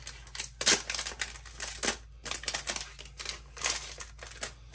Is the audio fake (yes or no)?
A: no